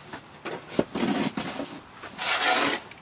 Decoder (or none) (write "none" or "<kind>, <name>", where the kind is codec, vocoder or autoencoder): none